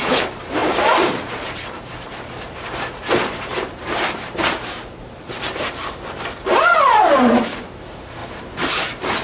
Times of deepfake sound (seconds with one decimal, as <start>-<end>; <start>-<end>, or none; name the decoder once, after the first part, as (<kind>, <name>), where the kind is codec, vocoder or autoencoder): 0.0-8.2 (vocoder, BigVGAN v2); 8.7-9.2